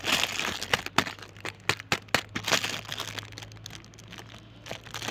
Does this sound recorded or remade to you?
recorded